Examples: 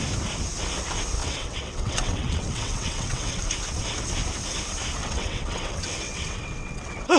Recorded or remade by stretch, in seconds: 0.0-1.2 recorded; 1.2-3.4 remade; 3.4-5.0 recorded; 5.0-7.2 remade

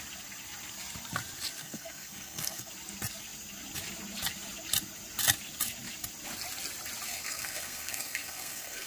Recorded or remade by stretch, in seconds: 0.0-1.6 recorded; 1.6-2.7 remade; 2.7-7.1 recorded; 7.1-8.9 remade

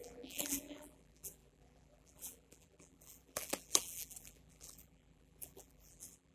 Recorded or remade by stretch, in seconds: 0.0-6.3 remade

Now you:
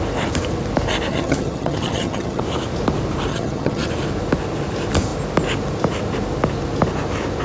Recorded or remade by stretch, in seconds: 0.0-1.1 recorded; 1.1-2.4 remade; 2.4-3.3 recorded; 3.3-3.9 remade; 3.9-7.4 recorded

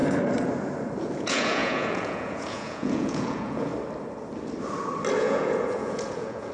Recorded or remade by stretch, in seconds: 0.0-1.1 recorded; 1.1-3.7 remade; 3.7-5.2 recorded; 5.2-6.5 remade

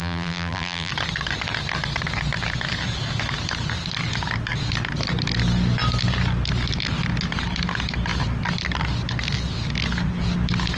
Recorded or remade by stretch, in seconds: 0.0-0.9 remade; 0.9-10.8 recorded

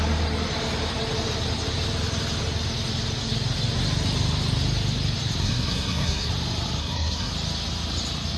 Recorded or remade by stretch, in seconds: 0.0-5.4 recorded; 5.4-6.3 remade; 6.3-6.8 recorded; 6.8-7.3 remade; 7.3-8.4 recorded

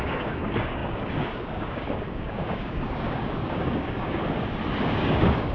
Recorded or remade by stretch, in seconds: 0.0-4.2 remade; 4.2-4.8 recorded; 4.8-5.5 remade